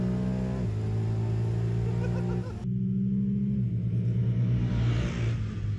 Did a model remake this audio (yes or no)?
no